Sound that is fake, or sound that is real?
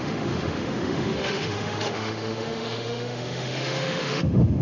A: fake